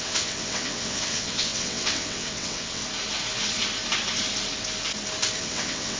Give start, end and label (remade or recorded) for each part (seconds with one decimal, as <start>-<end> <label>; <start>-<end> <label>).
0.0-2.8 remade; 2.8-5.4 recorded; 5.4-6.0 remade